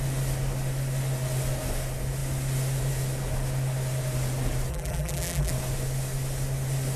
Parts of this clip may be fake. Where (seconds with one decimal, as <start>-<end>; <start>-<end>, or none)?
4.7-5.5